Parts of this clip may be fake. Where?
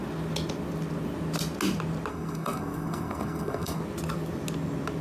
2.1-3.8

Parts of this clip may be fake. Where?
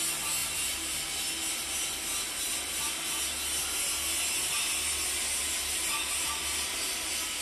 none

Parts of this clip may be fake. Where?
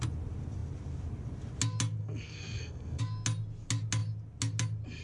2.0-3.0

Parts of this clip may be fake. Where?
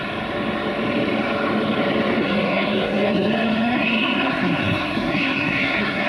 2.2-6.1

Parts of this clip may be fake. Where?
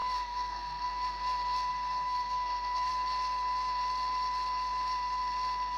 0.0-0.9; 1.7-2.9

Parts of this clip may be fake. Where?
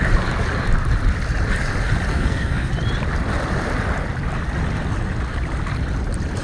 2.1-2.7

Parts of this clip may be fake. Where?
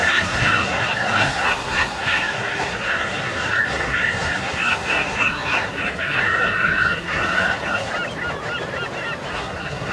0.0-7.9; 9.3-9.9